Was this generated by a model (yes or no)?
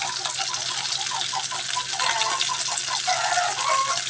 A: no